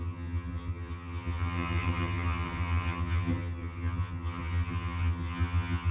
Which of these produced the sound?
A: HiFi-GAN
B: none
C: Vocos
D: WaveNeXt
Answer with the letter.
A